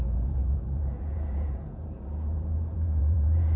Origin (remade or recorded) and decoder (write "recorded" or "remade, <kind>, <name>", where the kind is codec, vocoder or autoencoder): remade, vocoder, Vocos